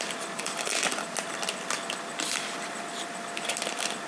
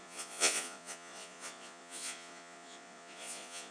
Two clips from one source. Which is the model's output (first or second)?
second